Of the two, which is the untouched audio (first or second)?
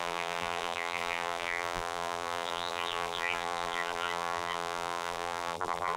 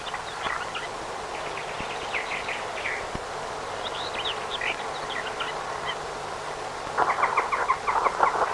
second